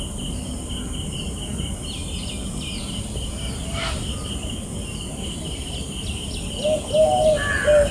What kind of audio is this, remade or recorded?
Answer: recorded